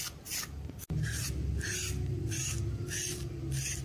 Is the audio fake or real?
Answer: real